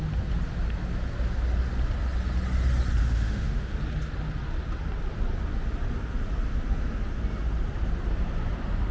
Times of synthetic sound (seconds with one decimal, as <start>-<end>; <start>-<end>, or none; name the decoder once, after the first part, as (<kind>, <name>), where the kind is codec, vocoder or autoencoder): 3.0-3.7 (autoencoder, DAC-VAE)